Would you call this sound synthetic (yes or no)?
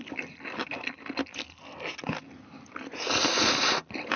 no